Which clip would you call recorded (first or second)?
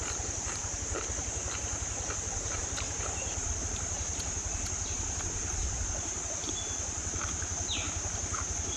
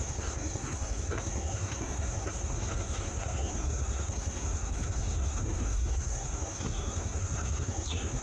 first